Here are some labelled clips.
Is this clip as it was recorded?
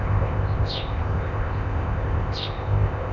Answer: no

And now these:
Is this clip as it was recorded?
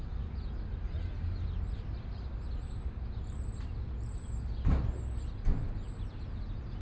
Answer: yes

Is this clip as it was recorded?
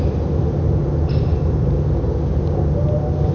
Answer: yes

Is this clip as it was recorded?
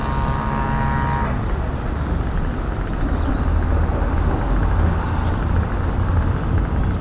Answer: yes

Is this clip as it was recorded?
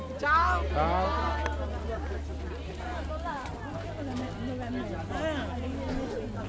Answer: yes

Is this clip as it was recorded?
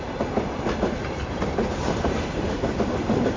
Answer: yes